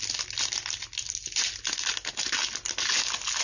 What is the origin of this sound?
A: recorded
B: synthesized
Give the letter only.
A